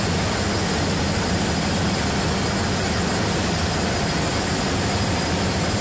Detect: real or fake real